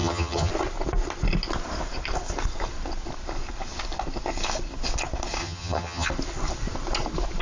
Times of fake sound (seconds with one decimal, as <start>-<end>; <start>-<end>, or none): 0.0-0.5; 5.4-6.1